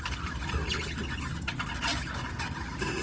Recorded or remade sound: recorded